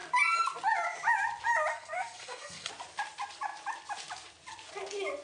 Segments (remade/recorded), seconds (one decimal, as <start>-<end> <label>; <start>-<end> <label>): 0.0-1.7 recorded; 1.7-2.7 remade; 2.7-5.2 recorded